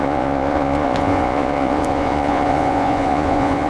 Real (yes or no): no